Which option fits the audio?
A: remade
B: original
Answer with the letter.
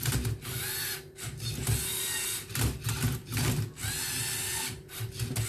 B